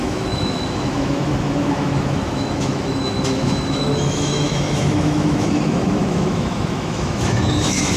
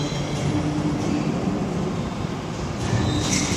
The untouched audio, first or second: second